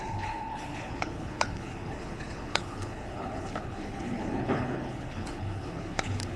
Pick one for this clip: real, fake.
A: fake